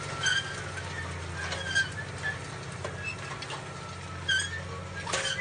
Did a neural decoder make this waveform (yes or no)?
no